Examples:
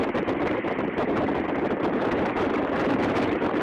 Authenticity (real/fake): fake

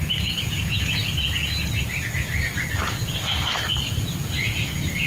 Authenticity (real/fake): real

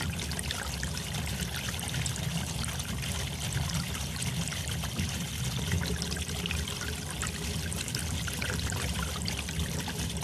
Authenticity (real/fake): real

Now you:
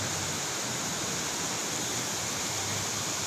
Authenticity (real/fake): real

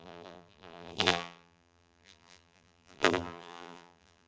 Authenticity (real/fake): fake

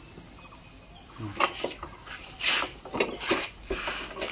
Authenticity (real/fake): real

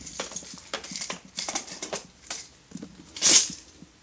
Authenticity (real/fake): fake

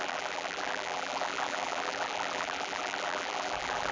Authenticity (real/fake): fake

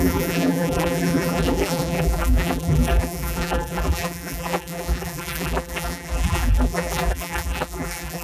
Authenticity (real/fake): fake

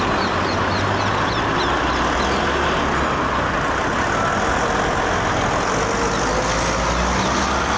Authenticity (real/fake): real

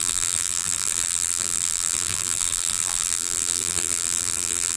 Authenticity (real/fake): fake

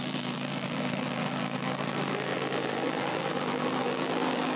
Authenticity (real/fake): fake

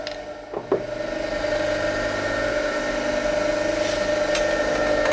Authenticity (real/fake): real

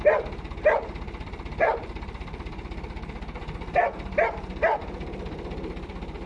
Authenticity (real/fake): fake